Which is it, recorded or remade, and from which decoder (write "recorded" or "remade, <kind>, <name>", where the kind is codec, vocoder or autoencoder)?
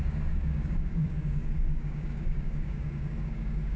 remade, codec, DAC